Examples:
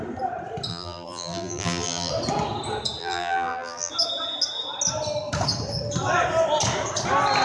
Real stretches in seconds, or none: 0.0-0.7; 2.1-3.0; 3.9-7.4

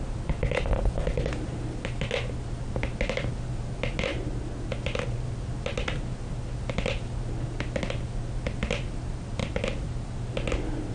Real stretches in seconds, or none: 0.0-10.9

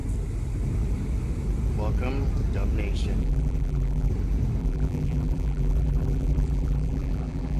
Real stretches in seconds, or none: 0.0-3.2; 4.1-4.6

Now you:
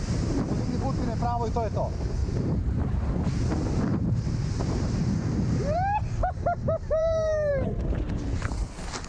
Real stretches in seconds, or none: 0.0-2.2; 3.0-3.9; 7.5-9.1

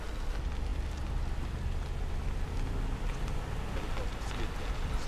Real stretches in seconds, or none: 0.0-5.1

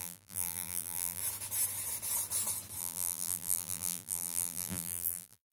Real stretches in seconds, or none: 1.2-2.8